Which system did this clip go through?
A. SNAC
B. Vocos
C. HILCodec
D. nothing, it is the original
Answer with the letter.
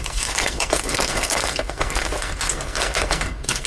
A